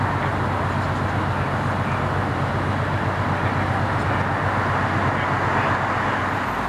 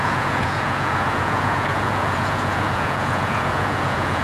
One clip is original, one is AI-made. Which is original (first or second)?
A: first